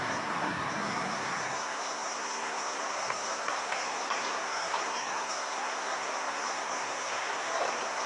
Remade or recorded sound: remade